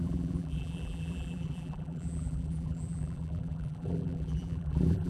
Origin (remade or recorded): remade